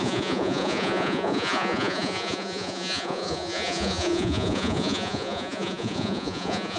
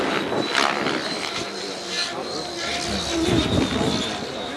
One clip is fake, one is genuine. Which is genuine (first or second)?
second